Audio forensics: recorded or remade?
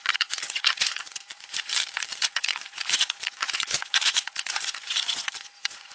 remade